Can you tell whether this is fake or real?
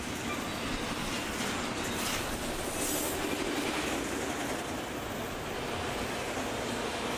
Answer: real